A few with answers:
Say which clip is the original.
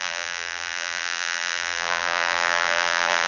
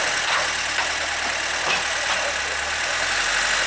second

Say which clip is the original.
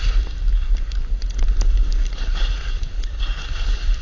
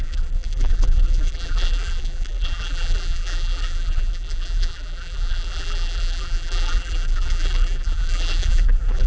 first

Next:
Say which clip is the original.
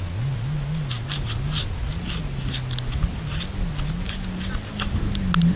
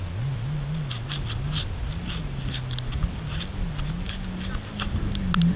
first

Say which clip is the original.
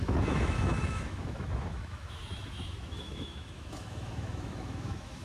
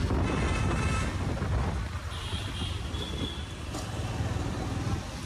second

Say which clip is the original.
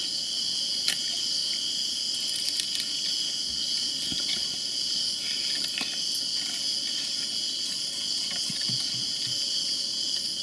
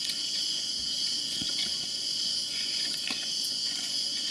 first